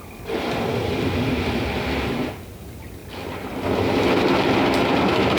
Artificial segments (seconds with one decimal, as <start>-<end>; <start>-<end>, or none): none